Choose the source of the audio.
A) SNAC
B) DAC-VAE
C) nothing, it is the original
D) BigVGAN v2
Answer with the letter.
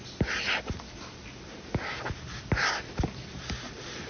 C